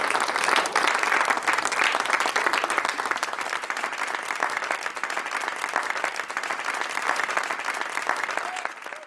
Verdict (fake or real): real